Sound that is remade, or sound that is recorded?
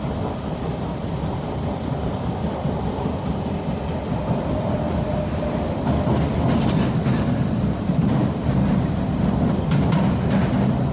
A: recorded